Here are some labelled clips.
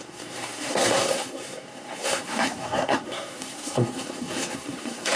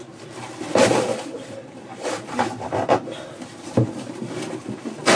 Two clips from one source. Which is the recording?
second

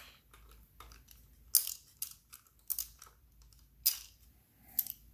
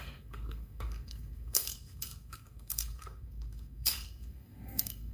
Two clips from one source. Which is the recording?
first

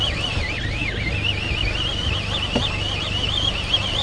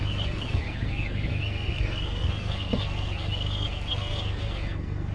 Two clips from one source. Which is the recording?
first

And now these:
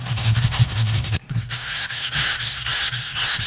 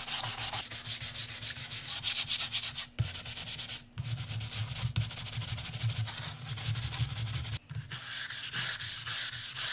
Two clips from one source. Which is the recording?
second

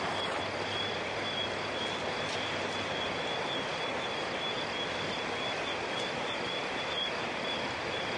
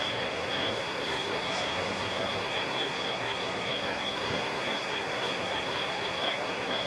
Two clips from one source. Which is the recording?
first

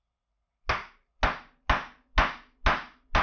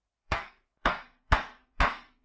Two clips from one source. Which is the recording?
first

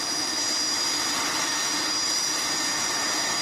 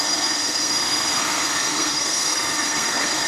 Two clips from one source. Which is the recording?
first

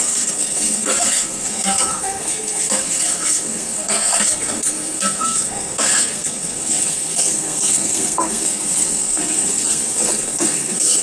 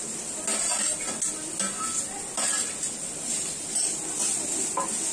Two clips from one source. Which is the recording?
second